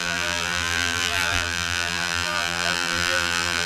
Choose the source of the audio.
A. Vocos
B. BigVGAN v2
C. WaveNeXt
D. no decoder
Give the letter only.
B